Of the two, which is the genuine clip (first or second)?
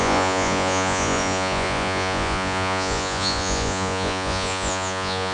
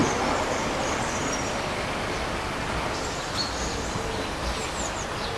second